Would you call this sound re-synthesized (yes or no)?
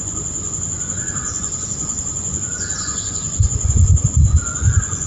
yes